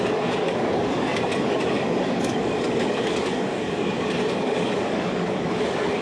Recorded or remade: remade